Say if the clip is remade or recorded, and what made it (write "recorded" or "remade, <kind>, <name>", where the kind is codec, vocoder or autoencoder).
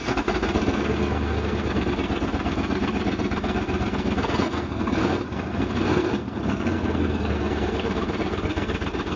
remade, codec, SNAC